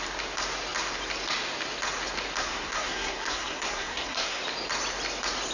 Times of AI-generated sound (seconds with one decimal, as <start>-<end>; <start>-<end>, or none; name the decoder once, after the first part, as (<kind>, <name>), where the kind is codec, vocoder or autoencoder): 2.4-4.4 (codec, SNAC)